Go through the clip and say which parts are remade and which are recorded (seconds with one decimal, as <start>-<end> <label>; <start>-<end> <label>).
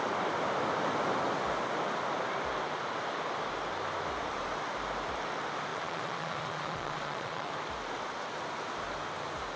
0.0-5.7 recorded; 5.7-7.5 remade; 7.5-9.6 recorded